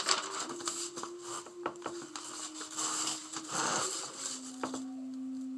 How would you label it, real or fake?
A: real